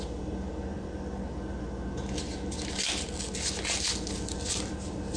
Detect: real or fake real